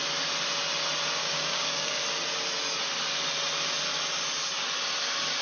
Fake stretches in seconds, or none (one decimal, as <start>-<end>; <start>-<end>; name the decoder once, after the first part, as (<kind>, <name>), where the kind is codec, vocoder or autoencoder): 1.2-2.0 (codec, DAC)